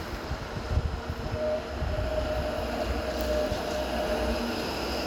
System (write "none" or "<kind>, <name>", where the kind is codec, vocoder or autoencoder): none